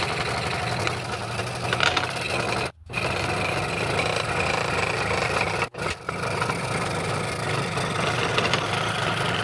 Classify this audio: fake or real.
real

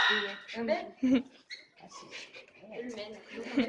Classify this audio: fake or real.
real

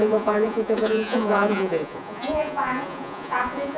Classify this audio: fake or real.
fake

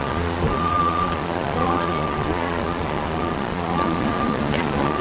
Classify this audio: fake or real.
fake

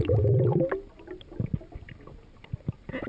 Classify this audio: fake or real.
real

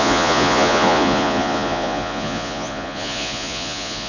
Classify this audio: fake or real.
fake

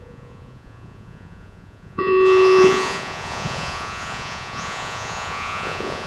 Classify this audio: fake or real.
fake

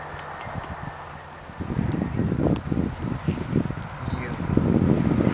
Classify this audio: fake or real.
real